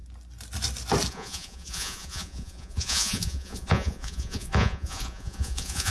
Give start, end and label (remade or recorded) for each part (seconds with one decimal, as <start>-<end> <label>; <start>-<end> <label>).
0.0-1.1 recorded; 1.1-5.9 remade